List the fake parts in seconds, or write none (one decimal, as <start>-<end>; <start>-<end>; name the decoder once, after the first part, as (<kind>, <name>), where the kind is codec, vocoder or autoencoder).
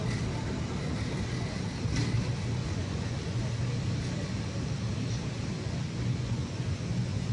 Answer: 2.6-3.4 (vocoder, Vocos); 5.6-7.3